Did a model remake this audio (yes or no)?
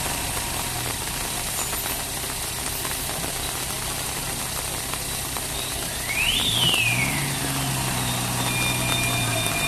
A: no